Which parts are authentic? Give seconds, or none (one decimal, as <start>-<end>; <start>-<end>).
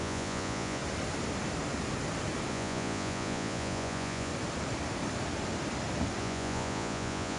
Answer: 0.8-2.5; 4.3-6.2